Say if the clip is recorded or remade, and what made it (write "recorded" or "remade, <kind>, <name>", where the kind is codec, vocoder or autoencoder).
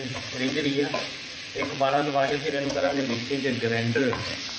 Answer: remade, vocoder, Vocos